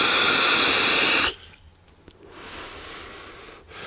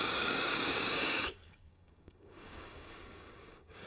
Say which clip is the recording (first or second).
first